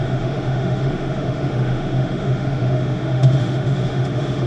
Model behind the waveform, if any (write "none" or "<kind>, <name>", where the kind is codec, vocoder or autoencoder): autoencoder, DAC-VAE